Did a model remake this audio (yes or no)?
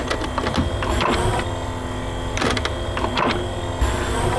no